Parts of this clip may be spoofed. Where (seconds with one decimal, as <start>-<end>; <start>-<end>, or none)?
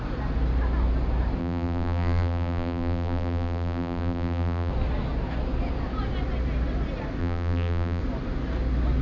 1.4-4.7; 7.2-8.0